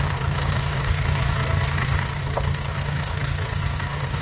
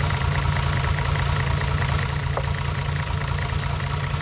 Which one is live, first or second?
second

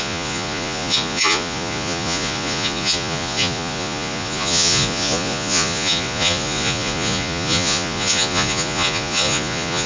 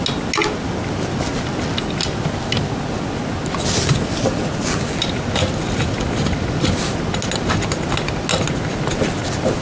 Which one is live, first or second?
second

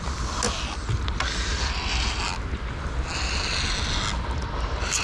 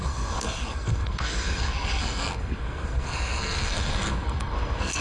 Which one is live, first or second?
first